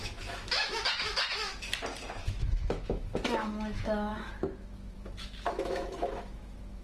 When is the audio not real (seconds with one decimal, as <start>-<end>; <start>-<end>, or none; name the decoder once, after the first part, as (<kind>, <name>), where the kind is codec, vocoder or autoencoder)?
0.0-1.5 (autoencoder, DAC-VAE); 2.2-6.8